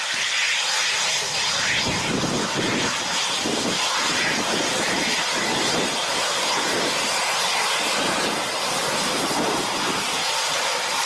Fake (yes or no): no